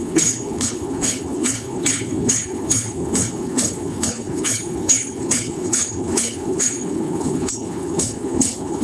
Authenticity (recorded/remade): remade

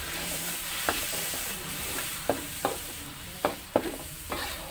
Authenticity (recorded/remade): remade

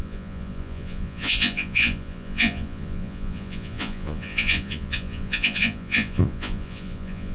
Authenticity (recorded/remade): remade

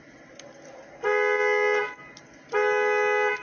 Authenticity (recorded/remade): recorded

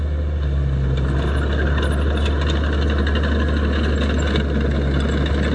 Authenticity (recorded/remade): recorded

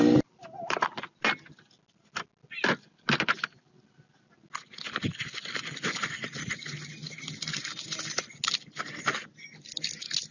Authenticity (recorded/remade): recorded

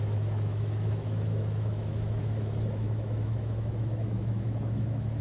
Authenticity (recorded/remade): remade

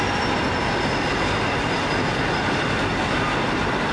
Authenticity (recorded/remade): recorded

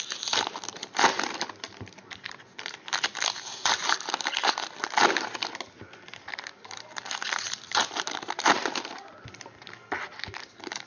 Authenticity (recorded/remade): remade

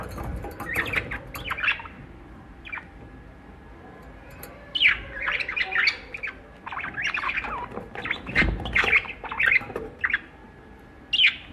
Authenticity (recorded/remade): recorded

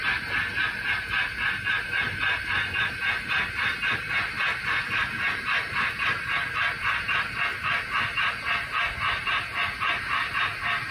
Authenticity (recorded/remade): recorded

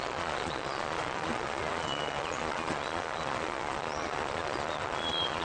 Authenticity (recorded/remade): remade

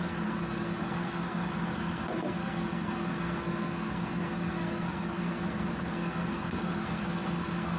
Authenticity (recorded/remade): remade